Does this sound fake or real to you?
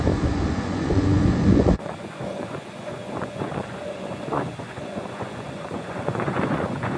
fake